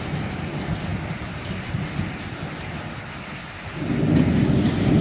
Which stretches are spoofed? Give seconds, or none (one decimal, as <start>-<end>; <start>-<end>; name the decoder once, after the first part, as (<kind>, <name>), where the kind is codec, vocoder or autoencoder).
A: none